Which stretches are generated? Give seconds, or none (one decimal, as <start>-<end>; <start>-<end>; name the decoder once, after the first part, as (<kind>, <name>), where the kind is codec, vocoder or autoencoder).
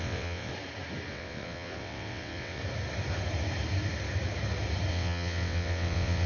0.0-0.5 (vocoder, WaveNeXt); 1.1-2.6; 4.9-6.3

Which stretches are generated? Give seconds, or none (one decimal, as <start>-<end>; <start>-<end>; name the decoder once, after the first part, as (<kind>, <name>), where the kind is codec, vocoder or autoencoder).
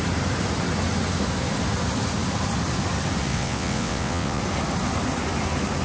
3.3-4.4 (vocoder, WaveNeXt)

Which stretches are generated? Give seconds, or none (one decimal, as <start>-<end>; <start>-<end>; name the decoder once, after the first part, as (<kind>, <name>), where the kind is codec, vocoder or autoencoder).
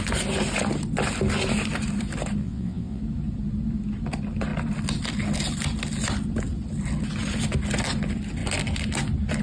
2.4-3.0 (vocoder, WaveNeXt)